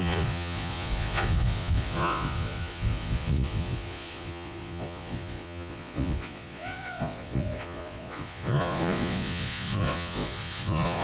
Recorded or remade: remade